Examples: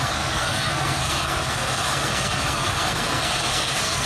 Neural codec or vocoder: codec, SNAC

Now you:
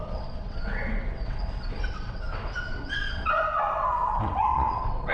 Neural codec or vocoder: vocoder, WaveNeXt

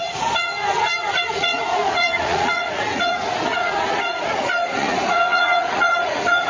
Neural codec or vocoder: vocoder, Vocos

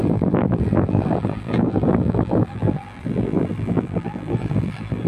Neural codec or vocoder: vocoder, BigVGAN v2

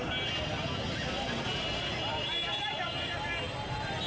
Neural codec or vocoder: none